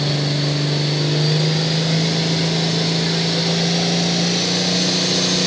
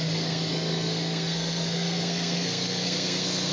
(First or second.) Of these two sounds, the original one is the first